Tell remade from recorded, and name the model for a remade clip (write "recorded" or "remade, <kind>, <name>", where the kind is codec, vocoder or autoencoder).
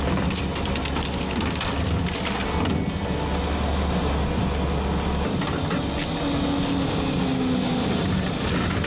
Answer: recorded